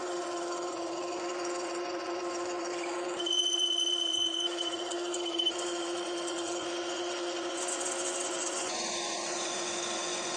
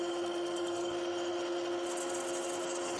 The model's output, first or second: first